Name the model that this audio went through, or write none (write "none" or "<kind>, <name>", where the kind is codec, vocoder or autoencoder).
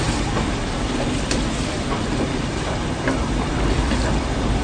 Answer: vocoder, BigVGAN v2